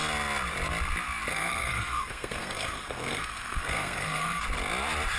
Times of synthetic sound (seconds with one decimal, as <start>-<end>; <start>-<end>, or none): 1.3-4.4

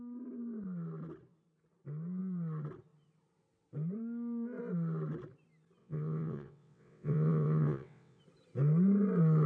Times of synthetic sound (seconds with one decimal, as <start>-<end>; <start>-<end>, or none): 5.8-8.2

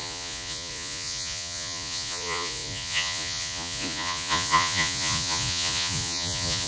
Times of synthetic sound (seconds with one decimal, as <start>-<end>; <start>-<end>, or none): 0.0-6.7